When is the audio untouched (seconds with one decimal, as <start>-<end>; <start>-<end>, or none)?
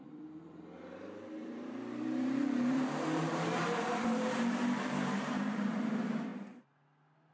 6.3-7.3